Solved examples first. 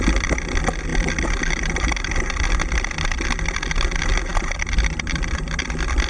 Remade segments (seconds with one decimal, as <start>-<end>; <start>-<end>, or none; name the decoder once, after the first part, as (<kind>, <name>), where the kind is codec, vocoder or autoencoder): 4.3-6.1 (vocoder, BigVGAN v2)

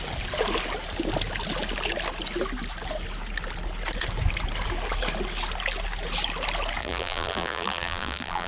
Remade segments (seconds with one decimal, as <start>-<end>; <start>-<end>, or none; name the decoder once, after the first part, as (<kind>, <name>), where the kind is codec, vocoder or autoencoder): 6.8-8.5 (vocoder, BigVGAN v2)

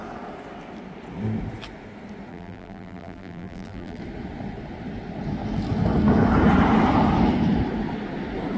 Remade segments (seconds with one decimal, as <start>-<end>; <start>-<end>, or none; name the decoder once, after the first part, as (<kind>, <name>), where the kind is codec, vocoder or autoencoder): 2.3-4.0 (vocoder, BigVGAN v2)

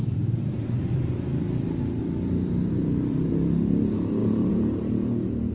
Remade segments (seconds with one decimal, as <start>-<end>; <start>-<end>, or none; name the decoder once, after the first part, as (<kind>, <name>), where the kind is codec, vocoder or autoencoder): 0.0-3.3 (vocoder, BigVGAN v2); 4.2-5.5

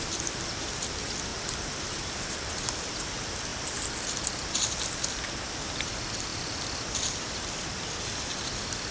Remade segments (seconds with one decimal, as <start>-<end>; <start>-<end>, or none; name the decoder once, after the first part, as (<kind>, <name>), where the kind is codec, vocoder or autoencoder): 0.0-1.3 (vocoder, BigVGAN v2); 1.8-8.9